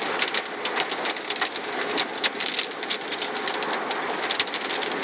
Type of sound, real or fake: real